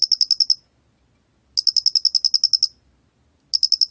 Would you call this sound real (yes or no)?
yes